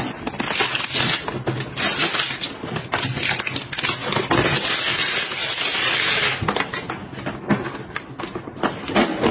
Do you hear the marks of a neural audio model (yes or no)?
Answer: no